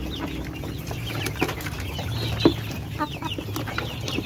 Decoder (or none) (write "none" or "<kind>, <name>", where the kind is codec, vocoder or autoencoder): none